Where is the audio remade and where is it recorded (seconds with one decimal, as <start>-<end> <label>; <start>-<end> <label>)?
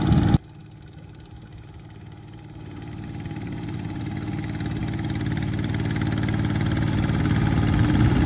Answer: 0.0-0.6 recorded; 0.6-4.1 remade; 4.1-4.8 recorded; 4.8-5.7 remade; 5.7-8.3 recorded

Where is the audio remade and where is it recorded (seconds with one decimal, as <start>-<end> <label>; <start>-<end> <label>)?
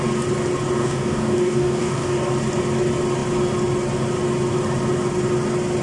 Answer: 0.0-0.8 recorded; 0.8-2.3 remade; 2.3-5.8 recorded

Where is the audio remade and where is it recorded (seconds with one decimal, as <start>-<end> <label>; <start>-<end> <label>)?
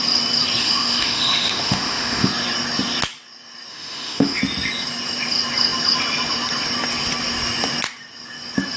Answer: 0.0-0.6 recorded; 0.6-2.3 remade; 2.3-3.7 recorded; 3.7-4.4 remade; 4.4-8.8 recorded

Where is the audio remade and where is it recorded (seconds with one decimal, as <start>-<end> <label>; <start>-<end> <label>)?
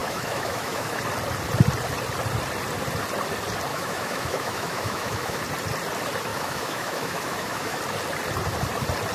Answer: 0.0-1.0 remade; 1.0-3.7 recorded; 3.7-5.4 remade; 5.4-6.3 recorded; 6.3-7.8 remade; 7.8-9.1 recorded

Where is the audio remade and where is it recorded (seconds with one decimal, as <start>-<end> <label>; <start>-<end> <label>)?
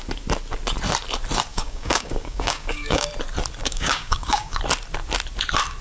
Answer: 0.0-1.5 recorded; 1.5-3.1 remade; 3.1-3.6 recorded; 3.6-4.6 remade; 4.6-5.8 recorded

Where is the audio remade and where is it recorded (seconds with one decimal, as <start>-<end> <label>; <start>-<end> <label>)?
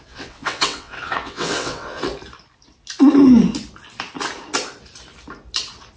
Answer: 0.0-2.1 remade; 2.1-6.0 recorded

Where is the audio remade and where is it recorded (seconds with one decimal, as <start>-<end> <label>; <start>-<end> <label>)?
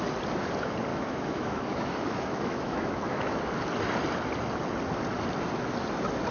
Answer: 0.0-0.9 recorded; 0.9-3.4 remade; 3.4-6.3 recorded